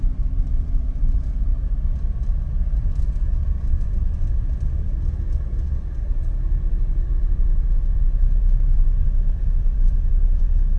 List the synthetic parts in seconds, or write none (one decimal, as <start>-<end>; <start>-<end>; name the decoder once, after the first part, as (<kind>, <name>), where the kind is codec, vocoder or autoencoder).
0.0-1.5 (vocoder, BigVGAN v2); 6.6-10.8